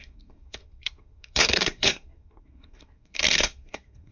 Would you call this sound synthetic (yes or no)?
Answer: yes